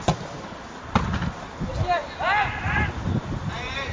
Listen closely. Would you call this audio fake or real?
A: real